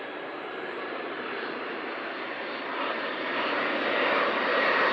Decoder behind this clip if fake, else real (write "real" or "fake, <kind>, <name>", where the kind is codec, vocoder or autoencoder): fake, vocoder, BigVGAN v2